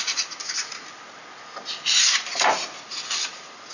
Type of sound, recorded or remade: recorded